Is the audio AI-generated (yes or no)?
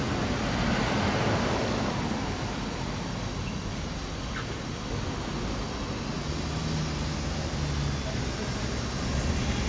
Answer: no